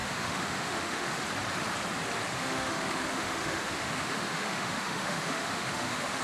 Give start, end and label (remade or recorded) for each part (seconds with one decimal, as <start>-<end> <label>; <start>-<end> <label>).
0.0-1.2 remade; 1.2-2.3 recorded; 2.3-6.2 remade